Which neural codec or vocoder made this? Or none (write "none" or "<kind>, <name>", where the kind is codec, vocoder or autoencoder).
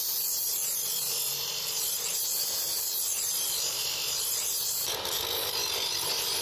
vocoder, BigVGAN v2